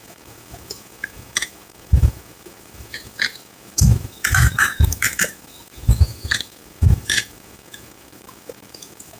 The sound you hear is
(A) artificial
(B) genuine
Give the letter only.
A